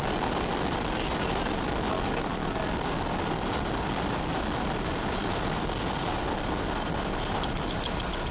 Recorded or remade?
recorded